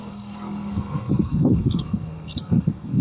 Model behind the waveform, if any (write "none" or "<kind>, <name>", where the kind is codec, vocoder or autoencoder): codec, SNAC